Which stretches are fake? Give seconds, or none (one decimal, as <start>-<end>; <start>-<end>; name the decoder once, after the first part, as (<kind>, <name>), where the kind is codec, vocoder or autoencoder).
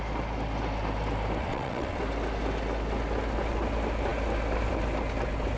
1.4-2.0 (vocoder, WaveNeXt)